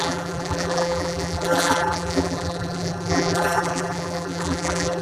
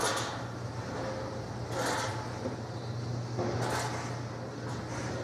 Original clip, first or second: second